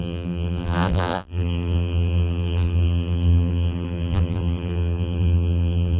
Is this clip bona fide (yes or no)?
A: no